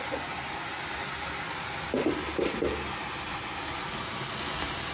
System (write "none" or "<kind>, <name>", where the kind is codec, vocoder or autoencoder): none